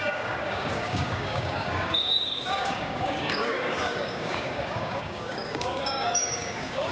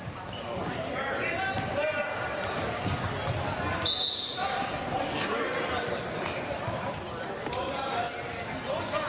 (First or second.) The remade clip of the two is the first